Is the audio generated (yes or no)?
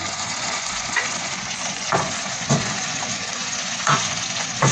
yes